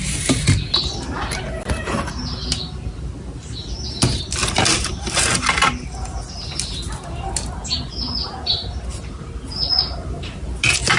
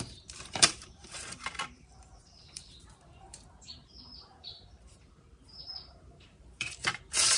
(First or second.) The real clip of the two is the first